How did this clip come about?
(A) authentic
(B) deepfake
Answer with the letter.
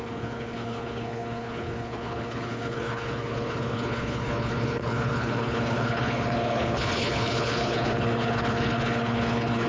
B